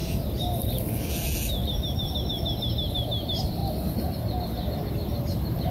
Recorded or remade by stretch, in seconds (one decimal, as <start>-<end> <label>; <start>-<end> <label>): 0.0-5.7 recorded